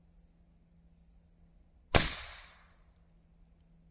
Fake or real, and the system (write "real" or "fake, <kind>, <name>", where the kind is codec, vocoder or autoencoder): real